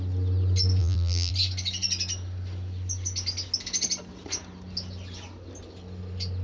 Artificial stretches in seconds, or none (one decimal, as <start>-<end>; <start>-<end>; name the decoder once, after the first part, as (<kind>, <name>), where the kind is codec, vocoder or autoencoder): 0.8-1.3 (vocoder, BigVGAN v2)